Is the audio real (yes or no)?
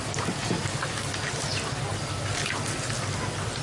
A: yes